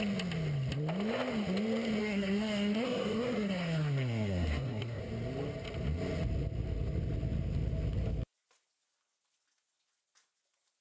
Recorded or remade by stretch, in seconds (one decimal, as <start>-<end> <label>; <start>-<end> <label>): 0.0-2.0 recorded; 2.0-5.0 remade; 5.0-10.8 recorded